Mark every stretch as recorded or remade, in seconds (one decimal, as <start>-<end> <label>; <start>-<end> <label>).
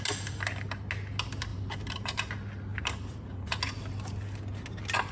0.0-1.5 recorded; 1.5-2.3 remade; 2.3-2.7 recorded; 2.7-3.4 remade; 3.4-5.1 recorded